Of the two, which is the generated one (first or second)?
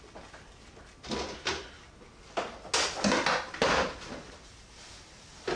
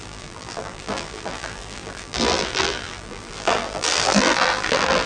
second